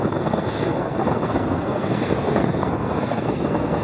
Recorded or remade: remade